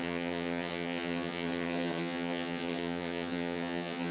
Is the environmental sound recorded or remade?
remade